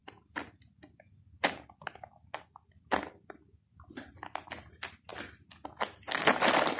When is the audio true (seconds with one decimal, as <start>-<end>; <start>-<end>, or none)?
0.0-6.8